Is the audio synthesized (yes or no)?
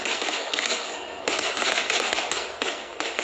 yes